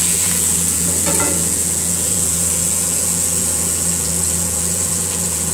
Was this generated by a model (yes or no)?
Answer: yes